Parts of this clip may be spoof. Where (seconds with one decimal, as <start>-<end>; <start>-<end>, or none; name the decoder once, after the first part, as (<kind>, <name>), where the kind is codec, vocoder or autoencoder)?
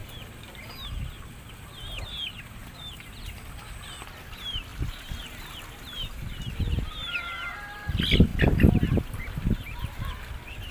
none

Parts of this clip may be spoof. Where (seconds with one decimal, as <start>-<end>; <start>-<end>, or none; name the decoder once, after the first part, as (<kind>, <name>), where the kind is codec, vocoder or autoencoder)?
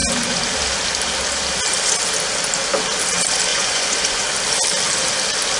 3.5-4.2 (vocoder, Vocos)